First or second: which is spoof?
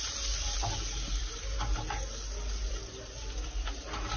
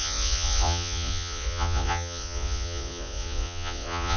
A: second